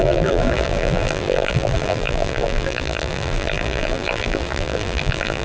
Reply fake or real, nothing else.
fake